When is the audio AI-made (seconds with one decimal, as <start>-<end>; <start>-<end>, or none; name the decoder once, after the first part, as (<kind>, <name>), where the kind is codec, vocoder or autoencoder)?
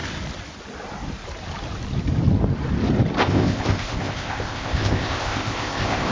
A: 3.2-6.1 (codec, ZipCodec)